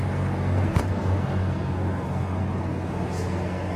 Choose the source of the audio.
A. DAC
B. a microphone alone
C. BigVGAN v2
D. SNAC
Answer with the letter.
D